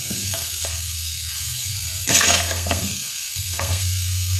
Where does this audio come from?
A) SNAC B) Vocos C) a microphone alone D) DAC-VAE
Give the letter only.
A